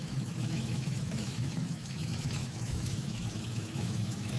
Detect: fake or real fake